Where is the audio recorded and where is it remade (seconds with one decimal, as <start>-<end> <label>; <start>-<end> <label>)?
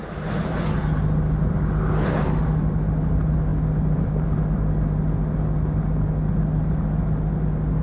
0.0-7.8 recorded